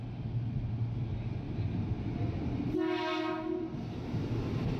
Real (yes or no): yes